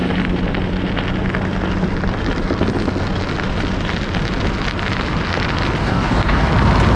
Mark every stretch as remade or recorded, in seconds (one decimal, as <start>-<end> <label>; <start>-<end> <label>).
0.0-5.8 recorded; 5.8-6.5 remade; 6.5-7.0 recorded